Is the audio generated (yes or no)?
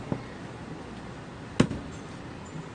no